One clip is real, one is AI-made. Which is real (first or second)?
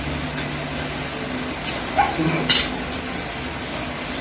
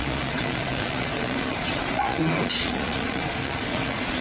first